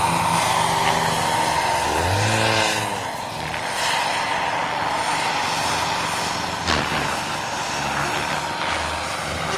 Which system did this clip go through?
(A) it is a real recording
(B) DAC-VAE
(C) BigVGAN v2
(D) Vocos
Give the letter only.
A